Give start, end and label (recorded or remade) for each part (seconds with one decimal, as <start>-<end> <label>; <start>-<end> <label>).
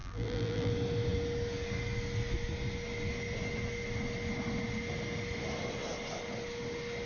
0.0-0.7 remade; 0.7-7.1 recorded